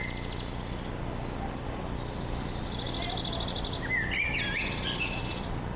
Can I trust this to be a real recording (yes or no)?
yes